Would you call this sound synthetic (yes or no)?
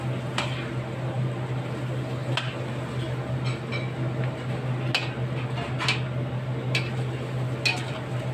no